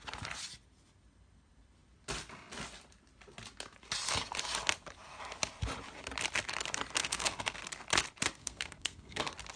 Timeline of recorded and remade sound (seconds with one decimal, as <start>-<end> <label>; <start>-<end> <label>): 0.0-7.0 recorded; 7.0-7.6 remade; 7.6-8.4 recorded; 8.4-9.2 remade; 9.2-9.6 recorded